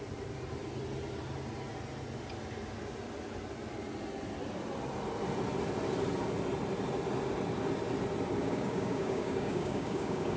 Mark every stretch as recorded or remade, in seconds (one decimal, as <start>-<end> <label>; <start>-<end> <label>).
0.0-8.4 recorded; 8.4-10.4 remade